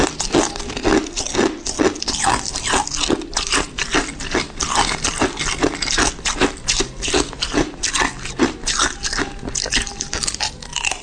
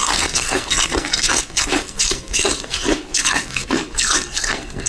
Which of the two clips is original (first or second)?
first